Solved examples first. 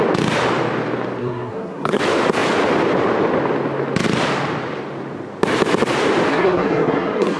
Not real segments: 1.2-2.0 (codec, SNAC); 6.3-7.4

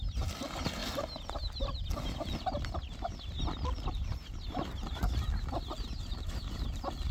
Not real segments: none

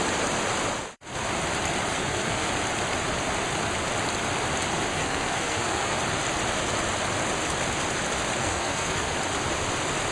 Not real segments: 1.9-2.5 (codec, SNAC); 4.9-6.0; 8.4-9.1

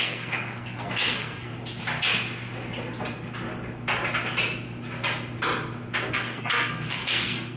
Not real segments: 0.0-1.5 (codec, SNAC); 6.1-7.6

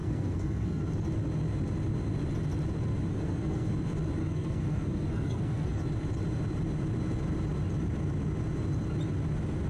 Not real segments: 0.0-0.8 (codec, SNAC); 3.1-3.7; 4.2-5.8

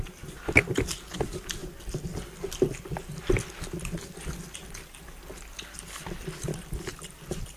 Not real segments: none

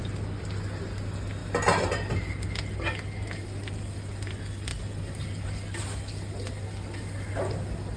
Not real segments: none